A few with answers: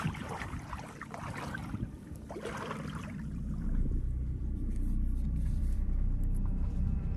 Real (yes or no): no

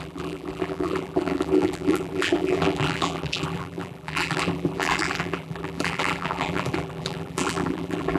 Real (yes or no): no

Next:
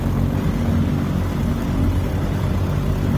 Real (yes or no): yes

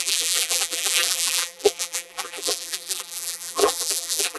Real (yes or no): no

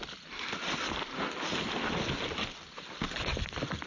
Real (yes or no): yes